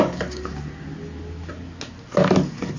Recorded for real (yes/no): yes